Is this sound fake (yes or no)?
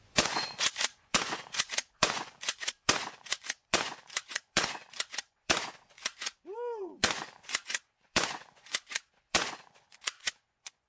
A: yes